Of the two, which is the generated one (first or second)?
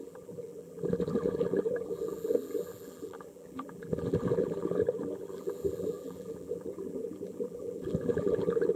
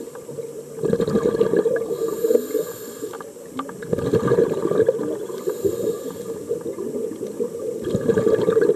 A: first